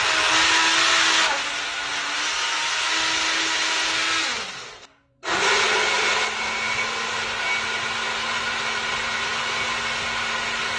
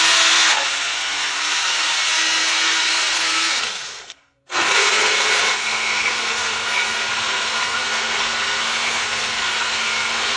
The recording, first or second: first